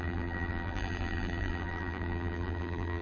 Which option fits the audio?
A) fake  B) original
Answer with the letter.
A